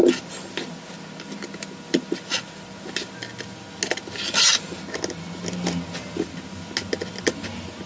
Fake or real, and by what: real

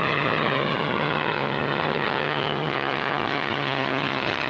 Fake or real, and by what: fake, vocoder, HiFi-GAN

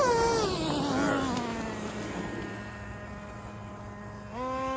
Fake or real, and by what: real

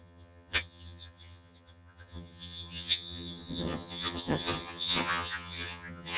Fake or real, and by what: fake, vocoder, HiFi-GAN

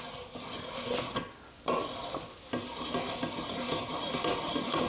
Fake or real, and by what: real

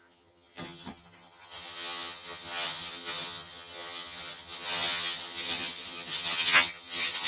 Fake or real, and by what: fake, vocoder, HiFi-GAN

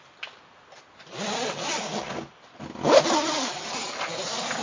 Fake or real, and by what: real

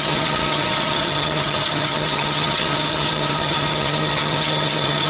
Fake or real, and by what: fake, vocoder, HiFi-GAN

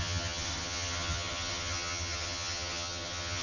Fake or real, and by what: fake, vocoder, HiFi-GAN